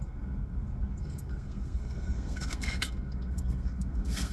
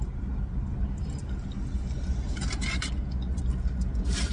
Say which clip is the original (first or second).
second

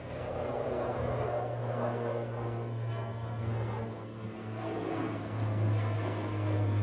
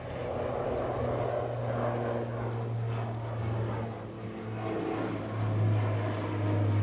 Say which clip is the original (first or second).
second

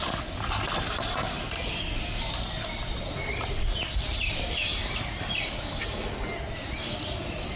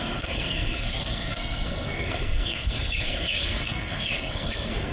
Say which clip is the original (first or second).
first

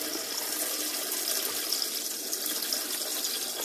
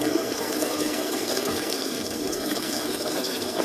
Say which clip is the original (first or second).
first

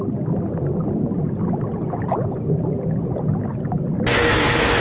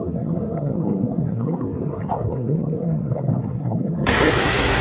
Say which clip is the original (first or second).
first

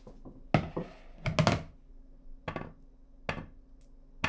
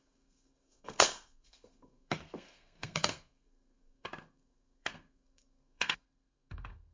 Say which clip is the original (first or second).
first